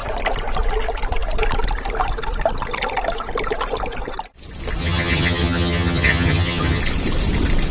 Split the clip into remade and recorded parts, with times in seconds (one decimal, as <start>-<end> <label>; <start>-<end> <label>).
0.0-4.8 recorded; 4.8-6.8 remade; 6.8-7.7 recorded

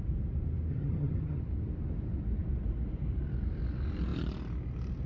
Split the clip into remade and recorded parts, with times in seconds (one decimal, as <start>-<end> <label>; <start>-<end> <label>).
0.0-0.7 recorded; 0.7-1.4 remade; 1.4-5.1 recorded

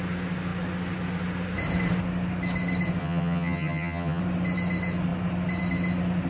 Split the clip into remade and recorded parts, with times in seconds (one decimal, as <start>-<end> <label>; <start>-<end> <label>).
0.0-3.0 recorded; 3.0-4.2 remade; 4.2-6.3 recorded

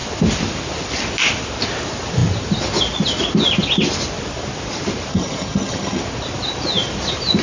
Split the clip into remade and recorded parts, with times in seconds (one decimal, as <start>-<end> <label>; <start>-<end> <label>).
0.0-5.1 recorded; 5.1-6.0 remade; 6.0-7.4 recorded

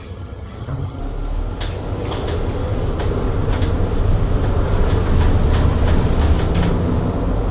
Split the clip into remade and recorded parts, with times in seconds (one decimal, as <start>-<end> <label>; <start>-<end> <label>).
0.0-1.0 remade; 1.0-7.5 recorded

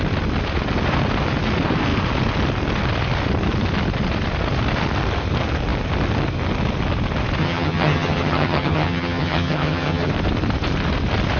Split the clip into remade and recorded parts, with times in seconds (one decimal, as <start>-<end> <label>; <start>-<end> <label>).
0.0-7.4 recorded; 7.4-10.1 remade; 10.1-11.4 recorded

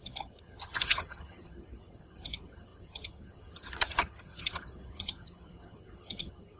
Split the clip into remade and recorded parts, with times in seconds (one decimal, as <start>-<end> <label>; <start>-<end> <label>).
0.0-6.6 remade

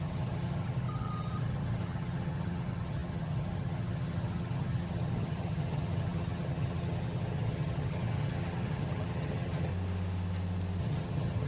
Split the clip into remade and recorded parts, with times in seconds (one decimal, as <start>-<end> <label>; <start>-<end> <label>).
0.0-9.7 remade; 9.7-10.8 recorded; 10.8-11.5 remade